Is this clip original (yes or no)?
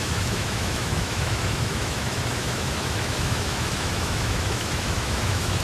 no